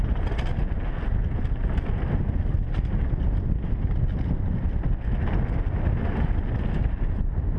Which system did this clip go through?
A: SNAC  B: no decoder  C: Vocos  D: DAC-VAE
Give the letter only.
B